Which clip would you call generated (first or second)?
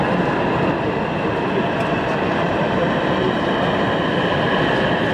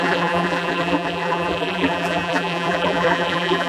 second